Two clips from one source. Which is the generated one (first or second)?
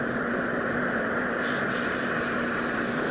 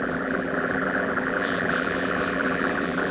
second